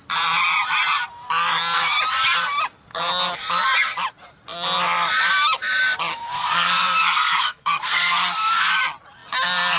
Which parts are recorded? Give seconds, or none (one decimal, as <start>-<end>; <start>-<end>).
0.0-6.1; 8.7-9.8